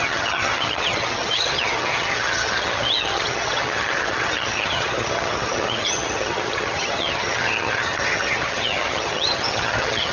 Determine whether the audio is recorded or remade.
remade